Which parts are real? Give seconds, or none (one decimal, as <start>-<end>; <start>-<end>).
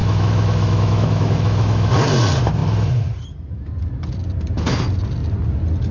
1.9-5.9